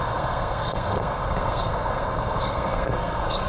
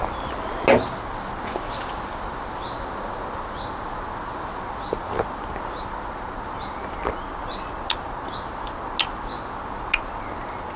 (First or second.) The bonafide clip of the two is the second